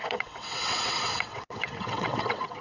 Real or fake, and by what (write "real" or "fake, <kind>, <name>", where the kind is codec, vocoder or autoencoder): fake, vocoder, WaveNeXt